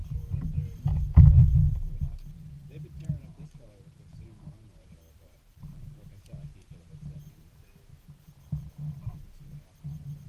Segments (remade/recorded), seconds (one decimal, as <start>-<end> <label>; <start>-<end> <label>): 0.0-0.8 remade; 0.8-1.6 recorded; 1.6-5.6 remade; 5.6-7.9 recorded; 7.9-8.7 remade; 8.7-10.3 recorded